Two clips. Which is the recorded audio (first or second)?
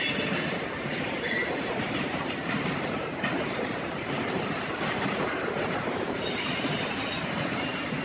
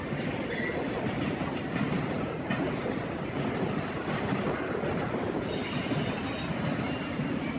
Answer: second